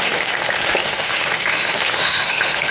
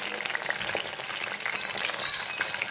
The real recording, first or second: second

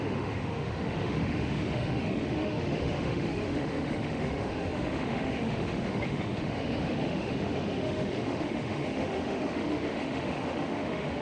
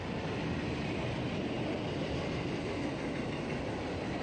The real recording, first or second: second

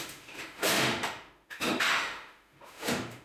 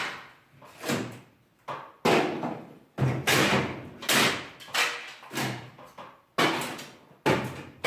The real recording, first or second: second